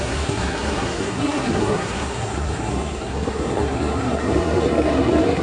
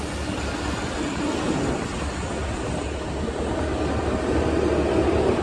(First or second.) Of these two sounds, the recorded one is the second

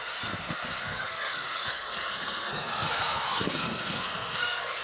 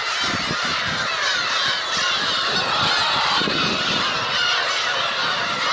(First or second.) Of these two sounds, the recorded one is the second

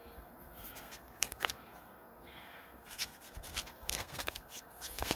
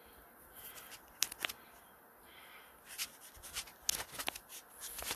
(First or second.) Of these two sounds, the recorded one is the second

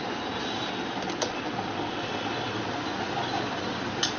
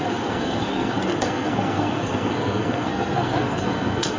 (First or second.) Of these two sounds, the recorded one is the first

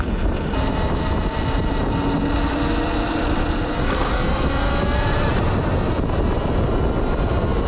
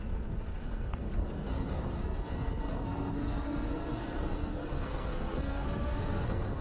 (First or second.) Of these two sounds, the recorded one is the first